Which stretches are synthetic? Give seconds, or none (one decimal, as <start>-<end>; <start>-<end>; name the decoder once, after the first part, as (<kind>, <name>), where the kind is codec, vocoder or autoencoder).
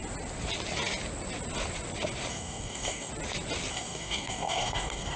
2.3-3.1 (codec, DAC); 3.7-5.2